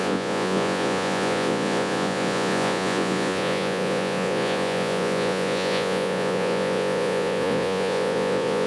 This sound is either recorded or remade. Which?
remade